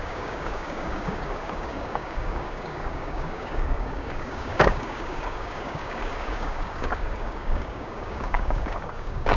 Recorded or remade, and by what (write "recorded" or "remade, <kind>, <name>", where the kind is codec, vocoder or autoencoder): remade, codec, DAC